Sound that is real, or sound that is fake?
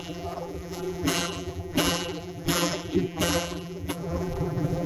fake